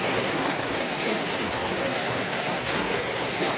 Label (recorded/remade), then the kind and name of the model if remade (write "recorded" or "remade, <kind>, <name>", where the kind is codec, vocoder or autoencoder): remade, codec, SNAC